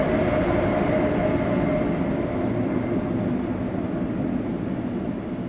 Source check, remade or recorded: recorded